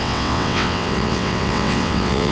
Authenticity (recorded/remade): remade